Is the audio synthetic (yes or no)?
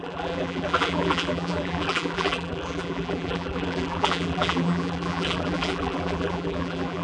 yes